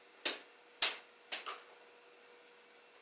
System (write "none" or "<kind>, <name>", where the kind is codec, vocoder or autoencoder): none